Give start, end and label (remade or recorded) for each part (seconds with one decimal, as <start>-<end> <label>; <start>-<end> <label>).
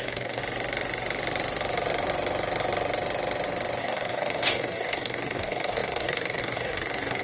0.0-0.4 remade; 0.4-3.8 recorded; 3.8-7.2 remade